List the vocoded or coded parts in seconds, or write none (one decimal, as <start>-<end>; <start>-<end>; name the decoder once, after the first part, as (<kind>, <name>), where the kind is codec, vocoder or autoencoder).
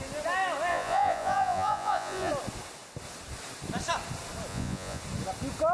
0.7-2.3 (vocoder, Vocos); 4.5-5.0